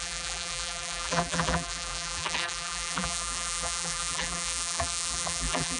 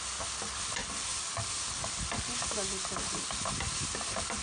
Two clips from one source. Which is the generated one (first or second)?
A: first